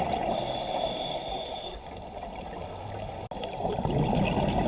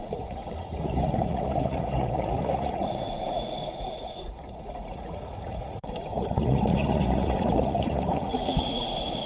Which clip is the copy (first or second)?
second